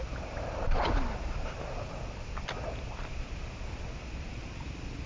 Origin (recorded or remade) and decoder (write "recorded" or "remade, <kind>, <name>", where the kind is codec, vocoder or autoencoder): recorded